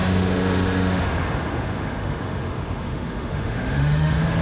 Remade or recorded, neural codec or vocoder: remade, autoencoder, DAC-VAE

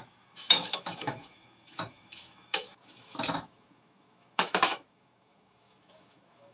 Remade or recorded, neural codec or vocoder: remade, autoencoder, DAC-VAE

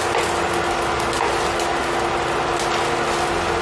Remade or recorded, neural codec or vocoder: recorded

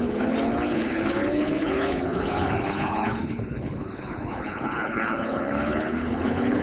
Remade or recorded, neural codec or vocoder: remade, codec, HILCodec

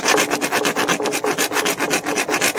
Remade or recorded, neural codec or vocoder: recorded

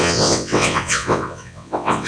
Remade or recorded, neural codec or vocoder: remade, vocoder, WaveNeXt